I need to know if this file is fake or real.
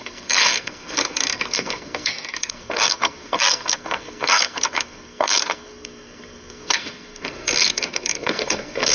fake